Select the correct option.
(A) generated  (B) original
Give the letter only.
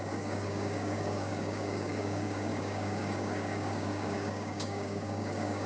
A